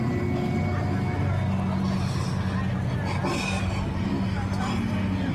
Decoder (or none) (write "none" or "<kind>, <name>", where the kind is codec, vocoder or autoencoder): none